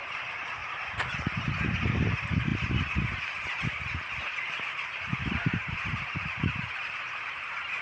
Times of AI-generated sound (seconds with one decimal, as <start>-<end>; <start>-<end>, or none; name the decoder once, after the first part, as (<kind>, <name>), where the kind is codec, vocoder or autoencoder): 0.0-0.6 (vocoder, BigVGAN v2); 2.1-2.5; 4.4-7.8

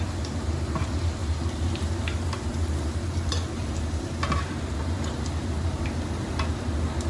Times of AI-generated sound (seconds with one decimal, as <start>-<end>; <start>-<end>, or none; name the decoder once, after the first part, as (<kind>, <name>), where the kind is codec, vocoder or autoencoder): 1.2-2.0 (vocoder, BigVGAN v2); 2.5-4.1

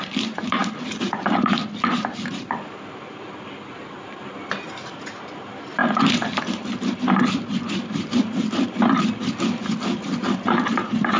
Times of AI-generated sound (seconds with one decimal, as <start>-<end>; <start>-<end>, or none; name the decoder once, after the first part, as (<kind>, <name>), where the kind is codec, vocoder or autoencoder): 0.0-11.2 (vocoder, BigVGAN v2)

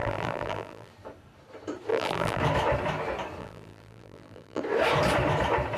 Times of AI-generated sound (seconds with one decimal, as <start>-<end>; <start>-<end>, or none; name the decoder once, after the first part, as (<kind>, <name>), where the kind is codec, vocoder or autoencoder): 0.0-0.9 (vocoder, BigVGAN v2); 1.9-2.4; 3.4-4.6

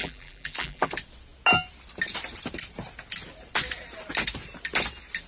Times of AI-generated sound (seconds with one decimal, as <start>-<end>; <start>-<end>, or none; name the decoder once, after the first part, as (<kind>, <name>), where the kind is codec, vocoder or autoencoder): 0.0-0.9 (vocoder, BigVGAN v2)